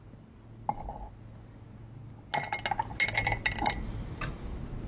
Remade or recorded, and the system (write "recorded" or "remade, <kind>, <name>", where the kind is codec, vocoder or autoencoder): recorded